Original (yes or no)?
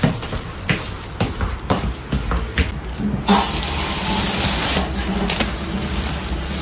yes